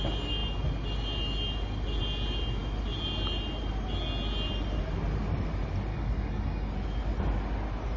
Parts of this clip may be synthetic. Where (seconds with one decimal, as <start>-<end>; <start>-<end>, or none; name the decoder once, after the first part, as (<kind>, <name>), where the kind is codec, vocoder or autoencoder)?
5.9-6.7 (codec, DAC)